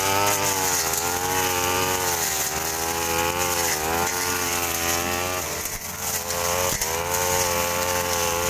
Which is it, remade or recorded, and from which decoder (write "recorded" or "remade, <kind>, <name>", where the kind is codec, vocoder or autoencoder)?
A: recorded